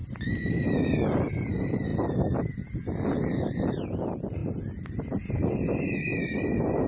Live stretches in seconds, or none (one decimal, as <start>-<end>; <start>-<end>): 1.9-3.1; 4.4-5.1

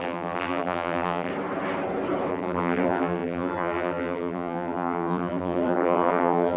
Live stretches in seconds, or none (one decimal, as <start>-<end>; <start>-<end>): 1.3-2.3

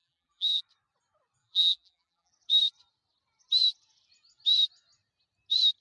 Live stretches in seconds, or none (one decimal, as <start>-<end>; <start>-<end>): 0.6-1.4; 2.3-5.8

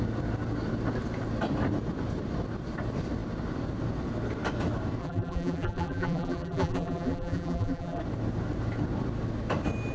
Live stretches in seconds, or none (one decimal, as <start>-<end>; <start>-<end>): 0.0-5.0; 8.0-9.9